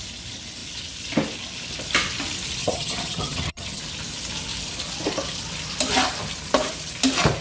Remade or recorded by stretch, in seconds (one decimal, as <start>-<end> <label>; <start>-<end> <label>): 0.0-2.6 recorded; 2.6-3.8 remade; 3.8-7.4 recorded